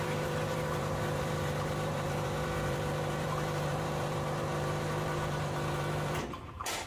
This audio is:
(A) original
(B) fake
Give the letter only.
B